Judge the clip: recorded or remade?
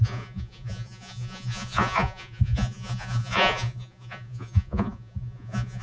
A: remade